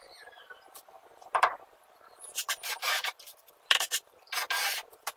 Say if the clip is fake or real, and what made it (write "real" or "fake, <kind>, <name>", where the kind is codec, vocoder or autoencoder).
fake, vocoder, BigVGAN v2